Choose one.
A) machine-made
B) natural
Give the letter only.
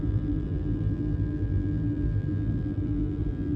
A